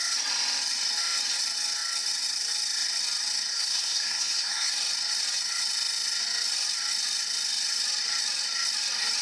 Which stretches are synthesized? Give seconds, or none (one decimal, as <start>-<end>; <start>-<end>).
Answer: 3.5-4.7